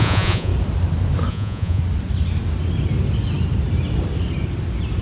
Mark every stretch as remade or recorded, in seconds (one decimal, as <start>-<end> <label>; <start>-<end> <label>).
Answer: 0.0-0.5 remade; 0.5-1.3 recorded; 1.3-1.8 remade; 1.8-5.0 recorded